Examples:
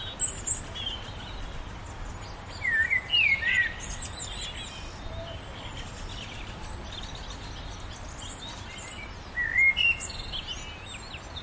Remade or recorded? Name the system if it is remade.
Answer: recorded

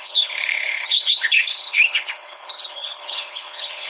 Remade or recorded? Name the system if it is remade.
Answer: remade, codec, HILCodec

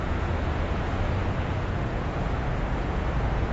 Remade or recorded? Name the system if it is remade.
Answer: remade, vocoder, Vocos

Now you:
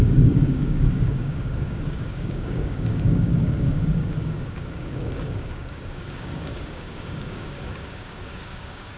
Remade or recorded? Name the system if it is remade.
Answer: remade, codec, DAC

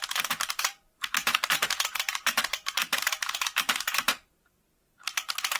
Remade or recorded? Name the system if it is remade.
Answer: remade, vocoder, BigVGAN v2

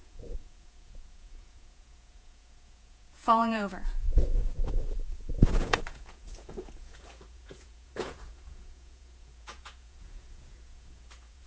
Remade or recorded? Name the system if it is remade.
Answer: remade, vocoder, Vocos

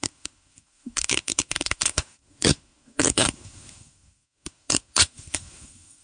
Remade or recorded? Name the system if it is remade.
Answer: remade, codec, SNAC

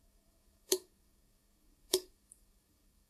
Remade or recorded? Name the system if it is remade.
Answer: remade, codec, DAC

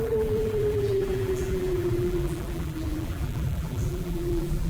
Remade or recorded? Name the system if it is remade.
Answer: remade, vocoder, BigVGAN v2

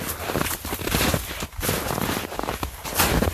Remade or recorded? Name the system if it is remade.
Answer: recorded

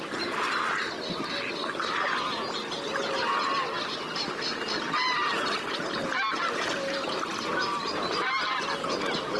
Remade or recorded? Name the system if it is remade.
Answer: recorded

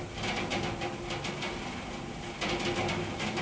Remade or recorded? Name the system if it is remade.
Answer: recorded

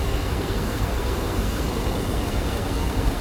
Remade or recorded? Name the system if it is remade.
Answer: remade, codec, SNAC